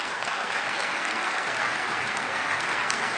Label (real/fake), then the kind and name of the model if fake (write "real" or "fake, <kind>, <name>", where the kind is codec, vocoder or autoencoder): fake, codec, SNAC